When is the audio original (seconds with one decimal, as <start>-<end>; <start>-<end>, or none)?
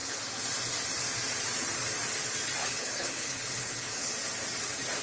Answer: 0.0-2.6; 4.1-5.0